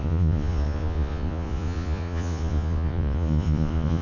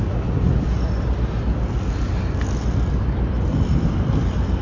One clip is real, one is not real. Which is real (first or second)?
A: second